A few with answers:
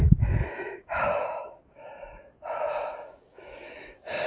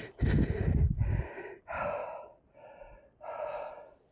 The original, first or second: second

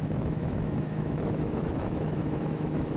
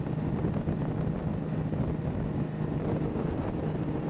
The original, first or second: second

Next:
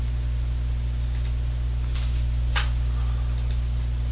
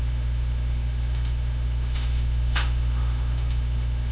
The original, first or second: first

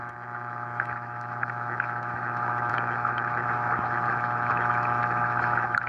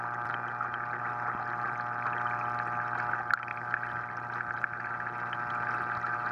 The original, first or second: second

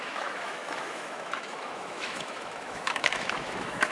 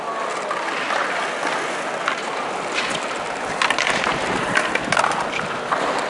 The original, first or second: second